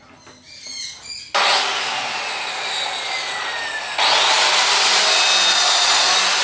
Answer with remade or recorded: recorded